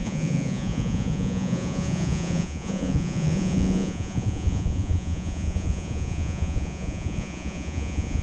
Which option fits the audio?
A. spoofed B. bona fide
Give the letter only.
A